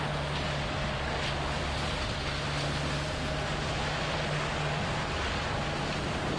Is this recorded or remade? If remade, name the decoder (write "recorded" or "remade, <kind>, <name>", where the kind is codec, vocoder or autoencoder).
recorded